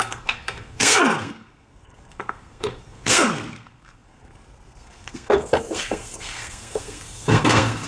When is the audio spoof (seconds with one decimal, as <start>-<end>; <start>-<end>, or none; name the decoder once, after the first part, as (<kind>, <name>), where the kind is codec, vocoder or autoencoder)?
0.0-7.9 (codec, SNAC)